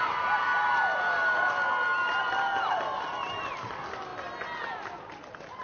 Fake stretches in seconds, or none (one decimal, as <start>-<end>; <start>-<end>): none